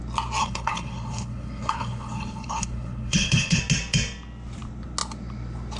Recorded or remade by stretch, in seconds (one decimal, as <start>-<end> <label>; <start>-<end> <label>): 0.0-0.4 recorded; 0.4-3.6 remade; 3.6-5.8 recorded